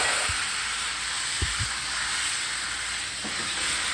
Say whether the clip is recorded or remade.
recorded